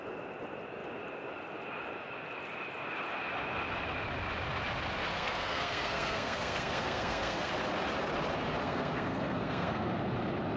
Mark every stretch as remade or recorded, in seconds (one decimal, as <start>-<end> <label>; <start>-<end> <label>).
0.0-5.1 recorded; 5.1-7.5 remade; 7.5-8.6 recorded; 8.6-10.0 remade; 10.0-10.6 recorded

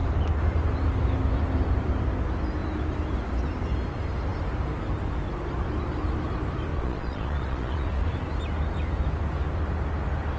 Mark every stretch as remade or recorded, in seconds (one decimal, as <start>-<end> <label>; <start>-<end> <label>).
0.0-6.7 recorded; 6.7-8.0 remade; 8.0-10.4 recorded

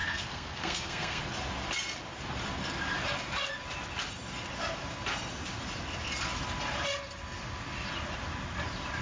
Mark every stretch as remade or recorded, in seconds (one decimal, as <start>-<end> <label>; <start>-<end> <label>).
0.0-1.2 remade; 1.2-9.0 recorded